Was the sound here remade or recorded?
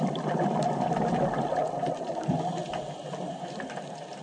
recorded